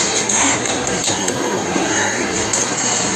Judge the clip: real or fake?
fake